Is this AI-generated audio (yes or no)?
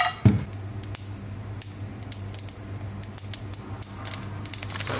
no